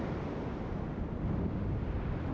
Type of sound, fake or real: real